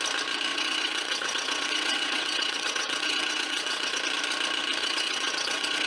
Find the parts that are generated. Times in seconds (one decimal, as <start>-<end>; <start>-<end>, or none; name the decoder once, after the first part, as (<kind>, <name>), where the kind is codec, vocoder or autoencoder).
0.5-4.0 (vocoder, WaveNeXt); 4.8-5.9